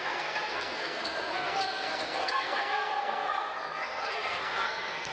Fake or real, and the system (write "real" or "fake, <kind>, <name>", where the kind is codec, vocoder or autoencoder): fake, codec, SNAC